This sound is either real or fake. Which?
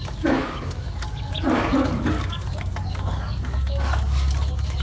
fake